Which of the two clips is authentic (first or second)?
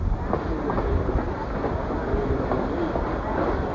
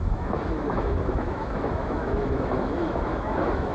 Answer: first